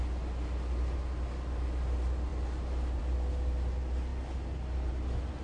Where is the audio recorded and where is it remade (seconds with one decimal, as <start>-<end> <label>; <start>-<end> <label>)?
0.0-5.4 recorded